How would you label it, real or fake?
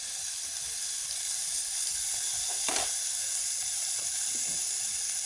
real